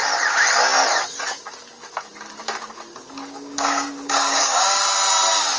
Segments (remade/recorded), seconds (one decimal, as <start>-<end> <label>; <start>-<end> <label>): 0.0-3.0 recorded; 3.0-4.8 remade; 4.8-5.6 recorded